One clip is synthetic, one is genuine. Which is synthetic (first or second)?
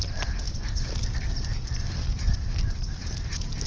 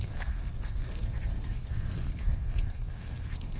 second